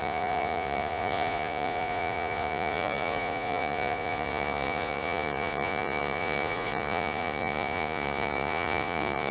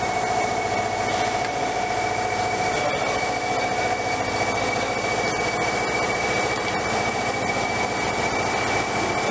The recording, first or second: second